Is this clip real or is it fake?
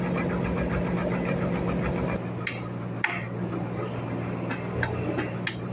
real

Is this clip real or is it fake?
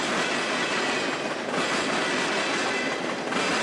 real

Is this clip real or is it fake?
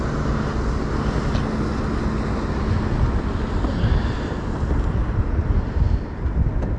real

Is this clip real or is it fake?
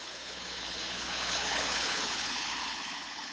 fake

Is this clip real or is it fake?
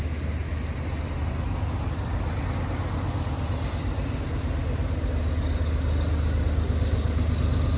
real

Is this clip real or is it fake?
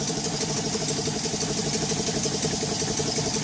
real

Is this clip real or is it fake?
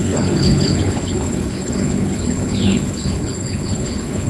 fake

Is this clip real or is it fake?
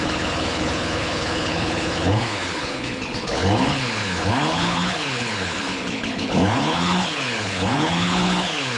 fake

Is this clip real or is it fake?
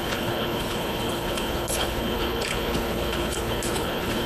fake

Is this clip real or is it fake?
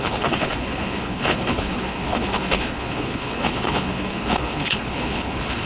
fake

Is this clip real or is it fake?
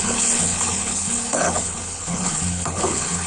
fake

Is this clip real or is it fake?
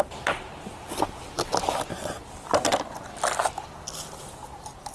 real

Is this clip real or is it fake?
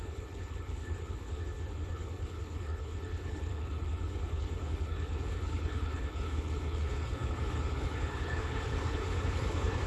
fake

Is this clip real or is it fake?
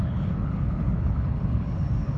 fake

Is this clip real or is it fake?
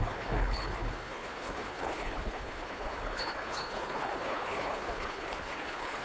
fake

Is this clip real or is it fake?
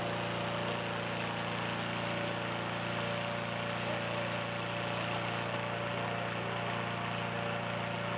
real